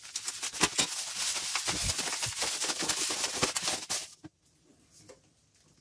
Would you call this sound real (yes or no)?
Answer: yes